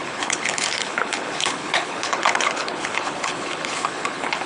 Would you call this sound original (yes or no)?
no